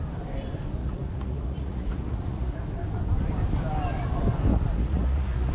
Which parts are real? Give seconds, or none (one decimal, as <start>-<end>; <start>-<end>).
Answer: 0.0-0.8; 2.6-4.5